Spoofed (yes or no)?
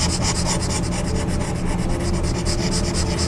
no